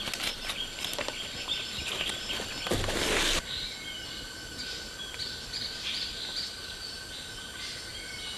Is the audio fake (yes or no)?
no